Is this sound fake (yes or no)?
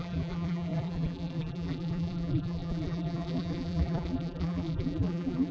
yes